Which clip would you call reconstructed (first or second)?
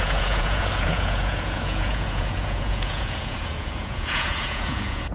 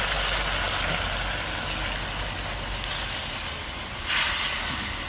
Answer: first